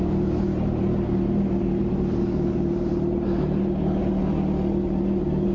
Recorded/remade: recorded